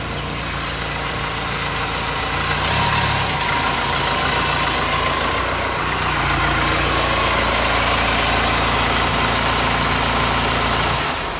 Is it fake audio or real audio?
real